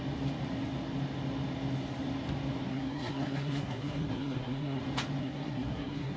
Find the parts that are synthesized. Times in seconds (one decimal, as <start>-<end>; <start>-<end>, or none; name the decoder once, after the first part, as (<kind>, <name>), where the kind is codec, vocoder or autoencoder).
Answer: 2.7-4.8 (codec, SNAC); 5.2-6.2